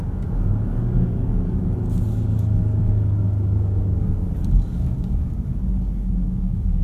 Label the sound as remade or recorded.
remade